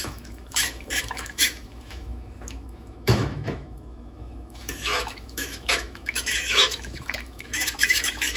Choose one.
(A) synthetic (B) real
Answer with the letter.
A